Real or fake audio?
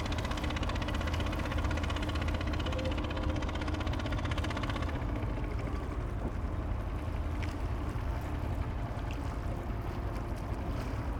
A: real